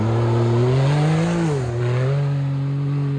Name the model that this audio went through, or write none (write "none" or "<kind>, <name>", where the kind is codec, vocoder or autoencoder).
none